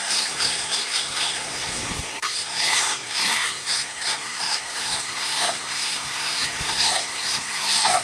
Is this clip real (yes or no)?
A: no